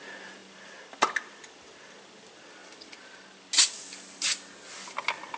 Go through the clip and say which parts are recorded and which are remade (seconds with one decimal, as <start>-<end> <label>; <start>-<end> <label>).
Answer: 0.0-5.4 recorded